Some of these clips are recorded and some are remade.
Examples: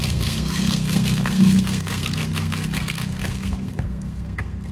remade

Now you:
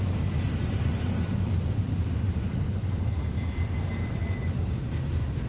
recorded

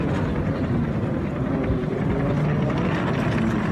recorded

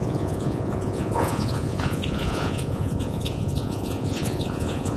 remade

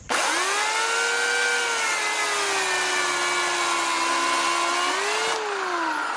recorded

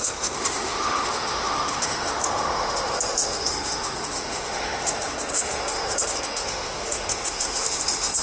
remade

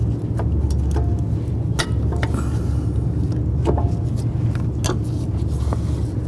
recorded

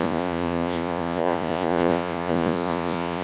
remade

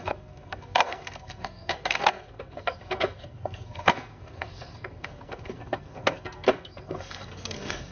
remade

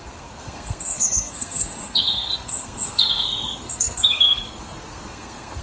remade